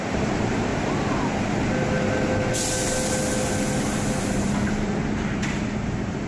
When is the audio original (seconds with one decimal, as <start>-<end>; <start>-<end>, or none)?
0.7-4.2